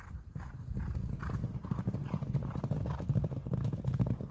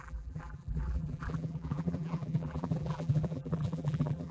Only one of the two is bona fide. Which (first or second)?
first